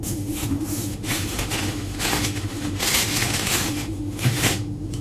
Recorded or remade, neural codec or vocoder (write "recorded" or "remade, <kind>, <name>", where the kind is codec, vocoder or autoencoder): remade, autoencoder, DAC-VAE